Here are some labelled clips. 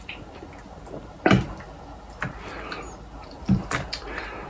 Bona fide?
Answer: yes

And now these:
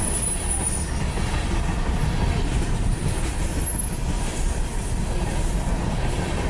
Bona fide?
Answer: yes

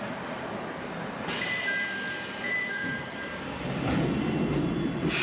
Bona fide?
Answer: no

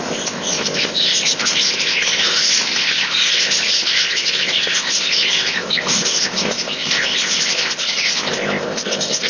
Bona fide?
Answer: no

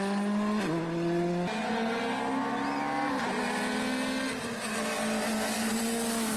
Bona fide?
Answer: yes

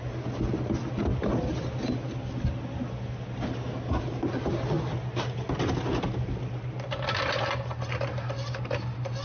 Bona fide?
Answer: yes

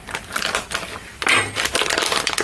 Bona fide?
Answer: no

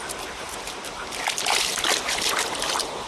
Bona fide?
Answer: yes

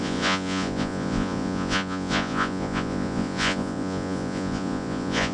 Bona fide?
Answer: no